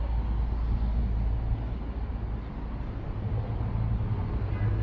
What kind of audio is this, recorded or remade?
recorded